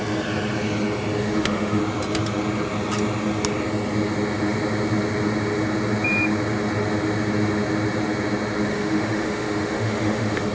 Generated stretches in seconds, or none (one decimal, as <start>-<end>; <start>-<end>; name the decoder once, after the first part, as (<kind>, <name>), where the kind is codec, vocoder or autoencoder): 1.2-1.8 (autoencoder, DAC-VAE); 8.7-10.5